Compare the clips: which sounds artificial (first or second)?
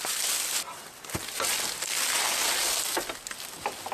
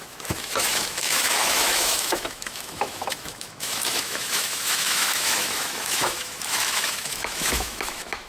second